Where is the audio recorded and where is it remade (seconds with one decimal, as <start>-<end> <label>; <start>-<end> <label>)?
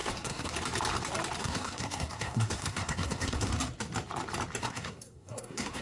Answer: 0.0-0.5 remade; 0.5-1.4 recorded; 1.4-3.5 remade; 3.5-4.6 recorded; 4.6-5.8 remade